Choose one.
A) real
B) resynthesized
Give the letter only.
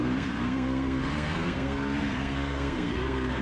B